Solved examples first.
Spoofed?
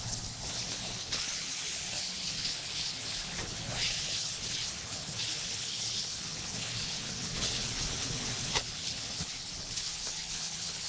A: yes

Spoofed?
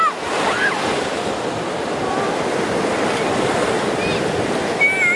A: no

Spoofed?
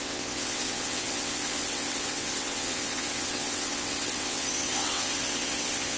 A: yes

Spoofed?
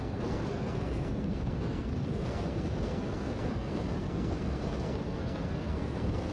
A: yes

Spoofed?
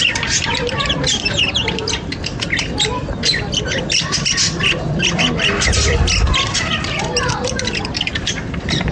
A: yes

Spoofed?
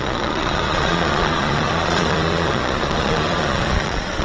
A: yes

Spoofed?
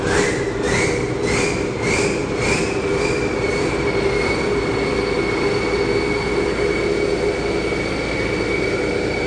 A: no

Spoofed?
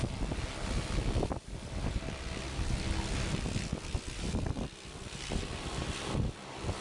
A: no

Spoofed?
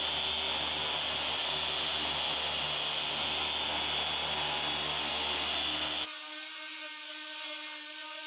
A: no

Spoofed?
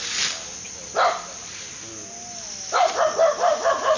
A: no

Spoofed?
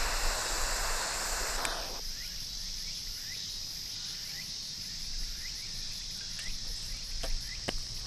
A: no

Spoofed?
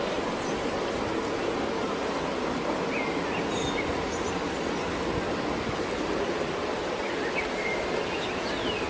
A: no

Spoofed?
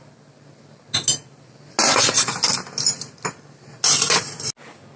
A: no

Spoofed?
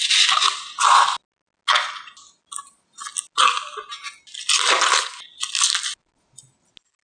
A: no